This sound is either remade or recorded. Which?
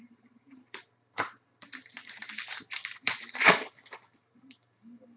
remade